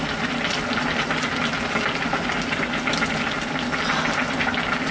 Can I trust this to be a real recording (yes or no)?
yes